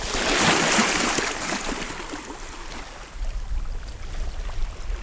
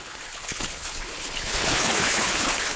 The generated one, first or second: second